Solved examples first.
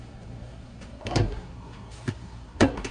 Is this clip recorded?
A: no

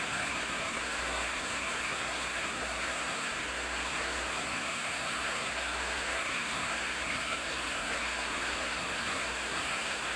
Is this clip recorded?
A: no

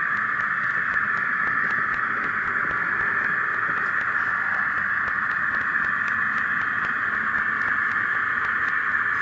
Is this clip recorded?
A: yes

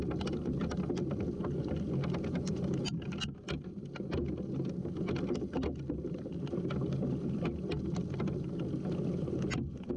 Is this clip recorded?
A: yes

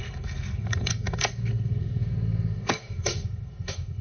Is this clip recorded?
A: no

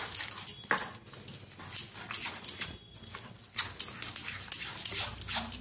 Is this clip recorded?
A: yes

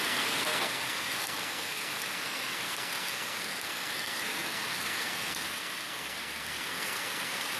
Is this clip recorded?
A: no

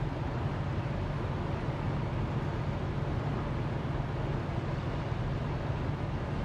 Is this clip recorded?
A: yes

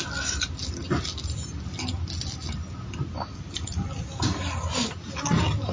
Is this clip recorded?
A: yes